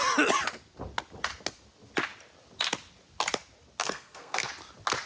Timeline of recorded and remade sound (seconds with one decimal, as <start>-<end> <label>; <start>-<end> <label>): 0.0-3.8 recorded; 3.8-4.5 remade; 4.5-5.1 recorded